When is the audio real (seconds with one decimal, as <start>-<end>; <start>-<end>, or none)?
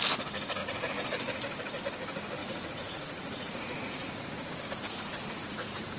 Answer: 0.0-2.4